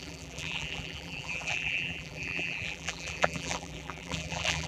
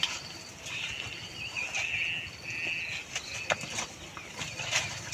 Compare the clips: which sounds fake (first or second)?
first